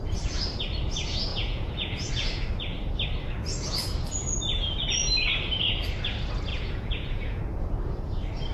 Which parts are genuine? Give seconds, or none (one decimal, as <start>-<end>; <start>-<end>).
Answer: 0.0-1.3; 2.1-6.5; 7.4-8.5